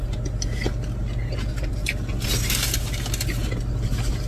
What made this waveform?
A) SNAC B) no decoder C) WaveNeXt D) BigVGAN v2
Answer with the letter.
B